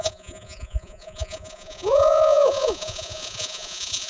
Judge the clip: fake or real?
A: fake